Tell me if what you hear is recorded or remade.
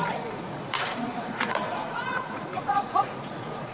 remade